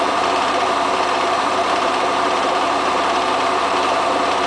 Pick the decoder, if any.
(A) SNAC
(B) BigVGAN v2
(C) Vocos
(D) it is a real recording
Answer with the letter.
B